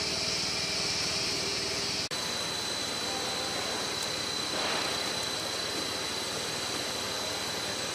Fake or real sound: real